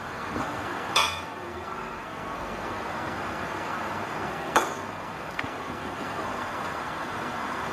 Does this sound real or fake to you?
fake